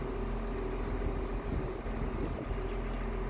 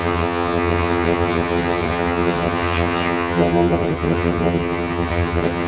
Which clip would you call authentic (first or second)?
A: first